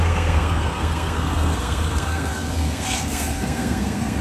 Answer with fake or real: fake